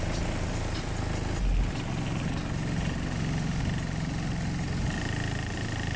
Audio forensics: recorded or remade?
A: recorded